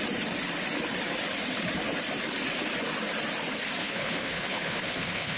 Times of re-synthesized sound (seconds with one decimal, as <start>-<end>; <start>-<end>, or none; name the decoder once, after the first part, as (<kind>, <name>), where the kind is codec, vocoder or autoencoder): 3.8-5.4 (codec, HILCodec)